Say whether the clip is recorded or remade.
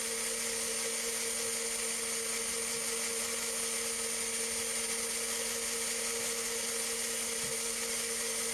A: recorded